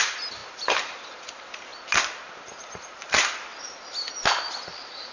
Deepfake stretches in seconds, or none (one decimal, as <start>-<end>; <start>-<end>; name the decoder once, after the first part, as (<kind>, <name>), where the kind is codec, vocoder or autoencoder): 0.0-1.7 (vocoder, BigVGAN v2); 2.3-3.5; 4.6-5.1